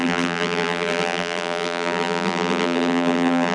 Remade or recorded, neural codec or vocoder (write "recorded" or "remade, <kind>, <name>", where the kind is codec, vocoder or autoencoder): remade, vocoder, BigVGAN v2